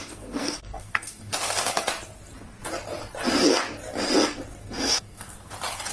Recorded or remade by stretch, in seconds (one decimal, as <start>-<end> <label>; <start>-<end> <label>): 0.0-1.9 remade; 1.9-4.6 recorded; 4.6-5.5 remade; 5.5-5.9 recorded

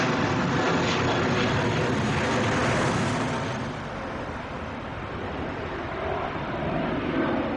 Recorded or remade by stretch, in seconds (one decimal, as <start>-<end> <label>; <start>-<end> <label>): 0.0-7.6 recorded

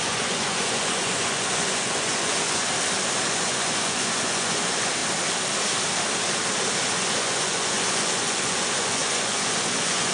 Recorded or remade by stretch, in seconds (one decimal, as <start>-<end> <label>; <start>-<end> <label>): 0.0-2.7 remade; 2.7-3.3 recorded; 3.3-5.0 remade; 5.0-6.9 recorded; 6.9-10.1 remade

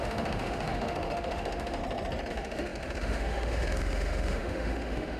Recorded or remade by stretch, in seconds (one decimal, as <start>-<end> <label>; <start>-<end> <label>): 0.0-1.8 remade; 1.8-2.3 recorded; 2.3-5.2 remade

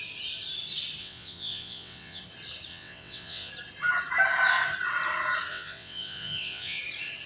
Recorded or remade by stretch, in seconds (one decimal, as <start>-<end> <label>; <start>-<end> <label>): 0.0-1.0 recorded; 1.0-2.2 remade; 2.2-2.7 recorded; 2.7-3.5 remade; 3.5-5.5 recorded; 5.5-6.8 remade; 6.8-7.3 recorded